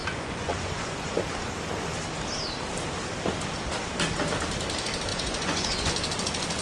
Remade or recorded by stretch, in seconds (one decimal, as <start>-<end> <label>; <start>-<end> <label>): 0.0-1.2 remade; 1.2-5.1 recorded; 5.1-5.9 remade; 5.9-6.6 recorded